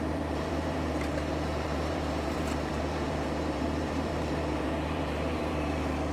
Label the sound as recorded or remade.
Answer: remade